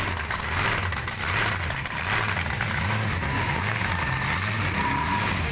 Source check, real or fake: real